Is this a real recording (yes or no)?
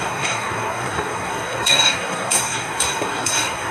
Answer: no